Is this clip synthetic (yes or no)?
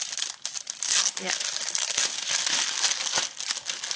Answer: no